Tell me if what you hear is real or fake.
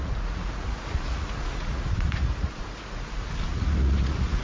fake